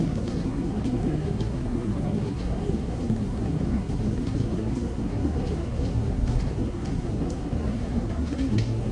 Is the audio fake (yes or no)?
yes